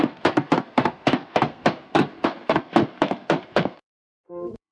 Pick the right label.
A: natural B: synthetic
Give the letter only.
B